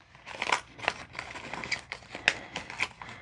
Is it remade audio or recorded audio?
recorded